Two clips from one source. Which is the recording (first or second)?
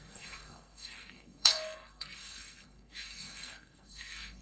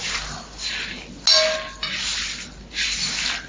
second